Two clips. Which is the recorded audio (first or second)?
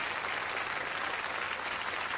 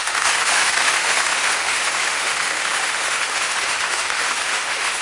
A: first